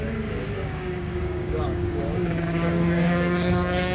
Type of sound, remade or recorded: remade